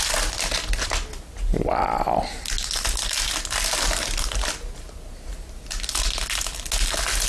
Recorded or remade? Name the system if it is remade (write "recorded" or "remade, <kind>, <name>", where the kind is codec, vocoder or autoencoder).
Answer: recorded